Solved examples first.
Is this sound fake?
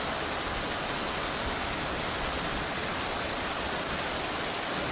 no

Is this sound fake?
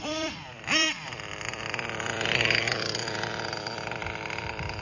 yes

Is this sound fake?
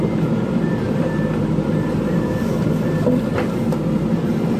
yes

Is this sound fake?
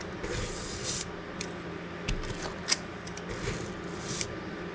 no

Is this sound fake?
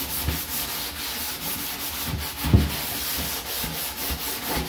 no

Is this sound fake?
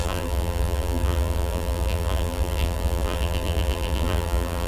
yes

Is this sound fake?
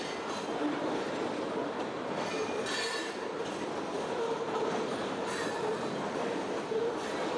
yes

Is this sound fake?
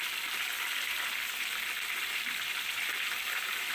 yes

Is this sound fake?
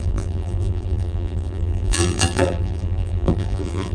yes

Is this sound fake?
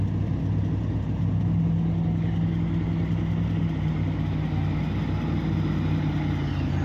no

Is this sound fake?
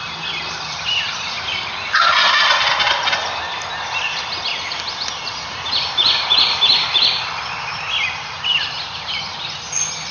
no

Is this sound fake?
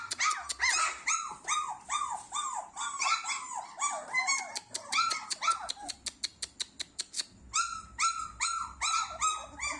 no